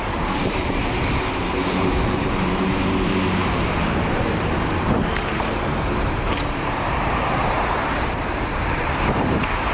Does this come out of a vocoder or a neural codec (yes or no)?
yes